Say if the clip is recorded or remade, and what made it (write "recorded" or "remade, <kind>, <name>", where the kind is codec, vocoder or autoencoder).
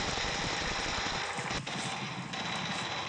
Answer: recorded